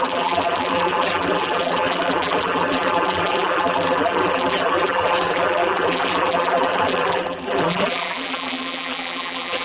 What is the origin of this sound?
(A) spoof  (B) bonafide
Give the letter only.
A